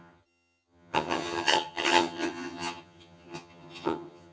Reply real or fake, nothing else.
fake